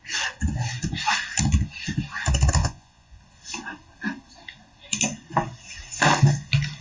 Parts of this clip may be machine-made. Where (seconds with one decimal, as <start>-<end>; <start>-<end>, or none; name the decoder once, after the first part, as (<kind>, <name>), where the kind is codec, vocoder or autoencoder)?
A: 2.6-3.2 (vocoder, Vocos)